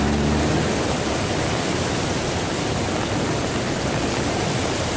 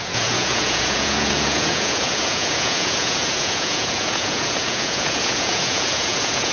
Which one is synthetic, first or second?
second